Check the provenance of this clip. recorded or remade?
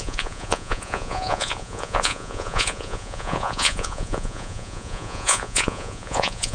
remade